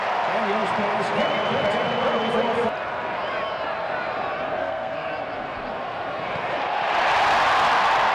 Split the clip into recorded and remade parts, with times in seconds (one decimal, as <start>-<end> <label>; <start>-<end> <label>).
0.0-4.6 recorded; 4.6-5.1 remade; 5.1-8.1 recorded